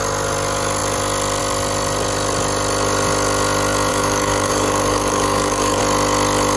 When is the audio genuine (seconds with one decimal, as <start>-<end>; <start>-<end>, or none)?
0.0-3.9; 5.8-6.6